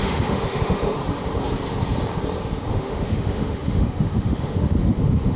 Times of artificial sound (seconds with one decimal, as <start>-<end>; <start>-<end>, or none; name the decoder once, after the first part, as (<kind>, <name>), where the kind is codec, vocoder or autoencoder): 0.0-1.0 (autoencoder, DAC-VAE); 2.7-5.4